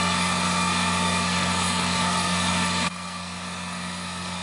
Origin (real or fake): fake